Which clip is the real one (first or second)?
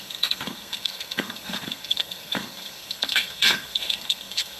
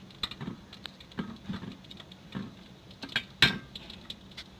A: second